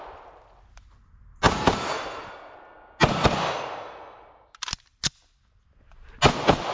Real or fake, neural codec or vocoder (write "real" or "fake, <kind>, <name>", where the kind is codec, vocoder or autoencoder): real